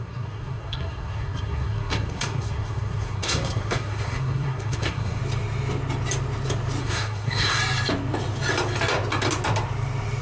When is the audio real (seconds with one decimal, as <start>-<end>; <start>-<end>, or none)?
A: 5.2-6.8; 7.6-10.2